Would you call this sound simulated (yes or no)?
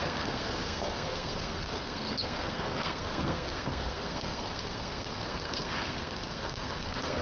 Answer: yes